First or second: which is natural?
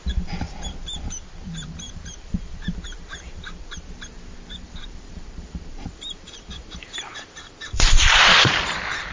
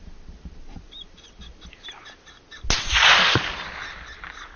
second